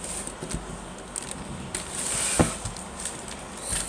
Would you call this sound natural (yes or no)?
yes